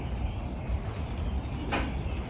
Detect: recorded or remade recorded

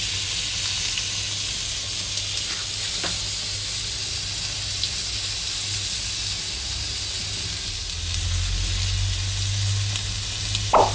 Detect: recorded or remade recorded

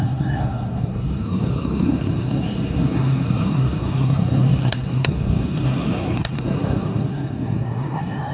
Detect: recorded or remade remade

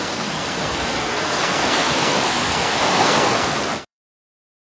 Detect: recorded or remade remade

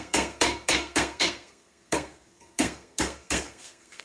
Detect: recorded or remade remade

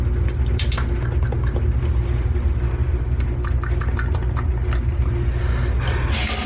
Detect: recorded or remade recorded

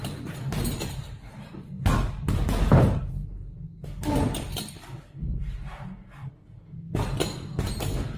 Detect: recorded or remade recorded